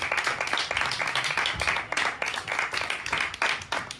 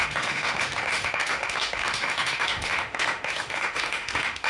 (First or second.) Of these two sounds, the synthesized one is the second